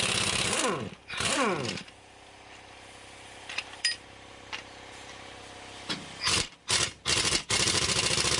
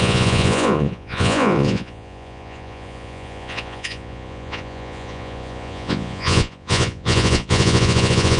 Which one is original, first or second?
first